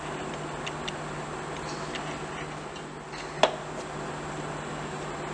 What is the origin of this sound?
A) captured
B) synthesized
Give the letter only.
A